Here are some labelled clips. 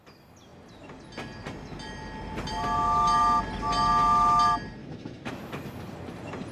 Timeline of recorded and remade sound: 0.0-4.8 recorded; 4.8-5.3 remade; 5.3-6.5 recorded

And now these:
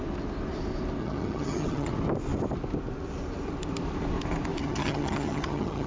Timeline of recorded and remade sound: 0.0-1.0 recorded; 1.0-1.9 remade; 1.9-4.6 recorded; 4.6-5.9 remade

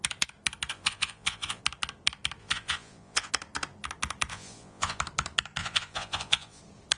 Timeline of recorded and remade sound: 0.0-0.7 recorded; 0.7-1.6 remade; 1.6-2.4 recorded; 2.4-3.3 remade; 3.3-4.3 recorded; 4.3-5.0 remade; 5.0-5.6 recorded; 5.6-6.6 remade; 6.6-7.0 recorded